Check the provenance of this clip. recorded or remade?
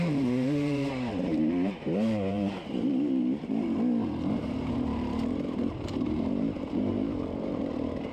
remade